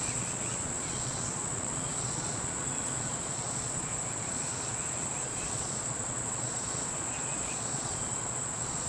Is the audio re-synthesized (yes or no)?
yes